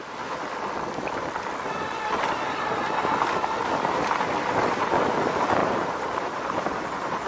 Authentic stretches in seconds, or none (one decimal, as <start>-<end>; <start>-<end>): 0.0-5.6